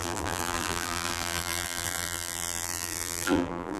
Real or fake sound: fake